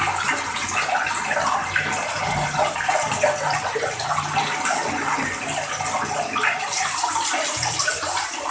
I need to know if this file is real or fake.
real